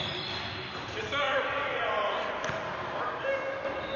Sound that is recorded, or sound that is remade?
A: recorded